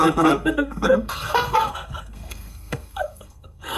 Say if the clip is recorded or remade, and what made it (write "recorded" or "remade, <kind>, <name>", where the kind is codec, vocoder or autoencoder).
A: remade, codec, SNAC